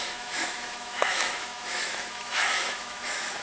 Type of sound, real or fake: fake